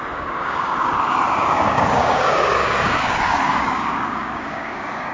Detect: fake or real fake